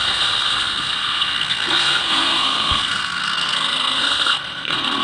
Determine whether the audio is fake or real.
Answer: fake